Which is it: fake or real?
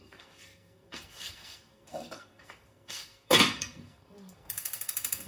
fake